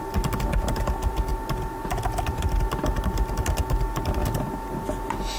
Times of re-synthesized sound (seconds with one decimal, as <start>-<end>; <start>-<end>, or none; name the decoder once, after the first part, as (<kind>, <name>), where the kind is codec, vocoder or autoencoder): none